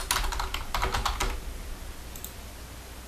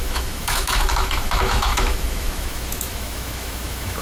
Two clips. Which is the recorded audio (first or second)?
first